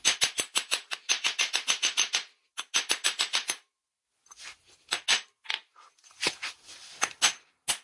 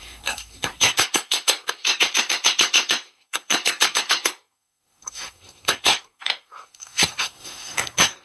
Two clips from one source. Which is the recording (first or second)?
first